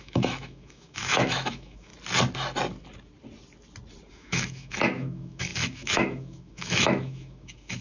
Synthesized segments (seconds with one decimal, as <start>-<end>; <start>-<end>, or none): 0.0-1.9; 4.1-7.8